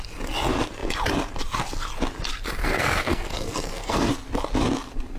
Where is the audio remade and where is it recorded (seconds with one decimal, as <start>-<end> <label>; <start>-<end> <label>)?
0.0-2.6 recorded; 2.6-4.1 remade; 4.1-5.2 recorded